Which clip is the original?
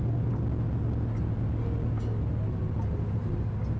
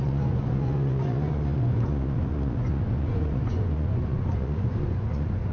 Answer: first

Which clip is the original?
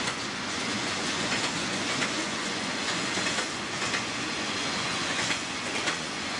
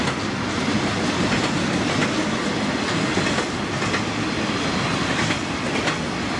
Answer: second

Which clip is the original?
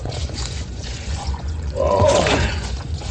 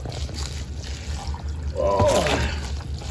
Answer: second